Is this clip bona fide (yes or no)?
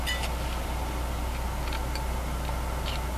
yes